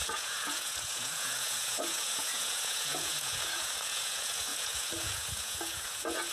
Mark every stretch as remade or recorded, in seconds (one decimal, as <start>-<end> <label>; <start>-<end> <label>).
0.0-6.3 remade